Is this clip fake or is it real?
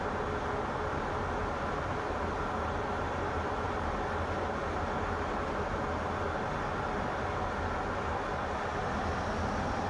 real